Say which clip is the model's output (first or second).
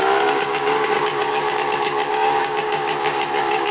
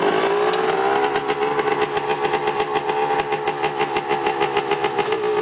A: first